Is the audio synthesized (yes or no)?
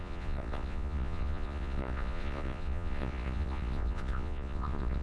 yes